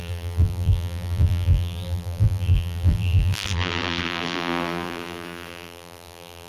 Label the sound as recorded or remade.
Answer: remade